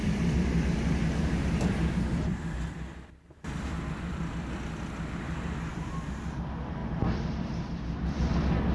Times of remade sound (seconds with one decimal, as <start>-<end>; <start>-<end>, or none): 0.0-5.2; 5.7-6.3; 6.8-8.7